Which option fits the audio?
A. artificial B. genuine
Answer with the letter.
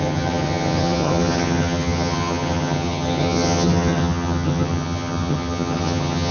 A